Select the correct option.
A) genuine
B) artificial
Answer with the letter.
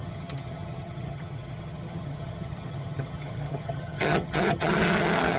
B